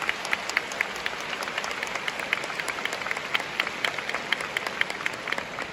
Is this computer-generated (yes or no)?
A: no